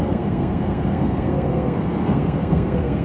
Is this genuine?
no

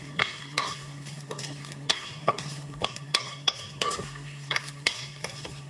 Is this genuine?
no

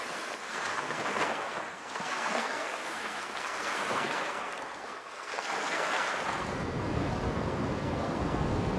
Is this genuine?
no